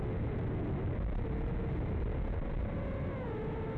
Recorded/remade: recorded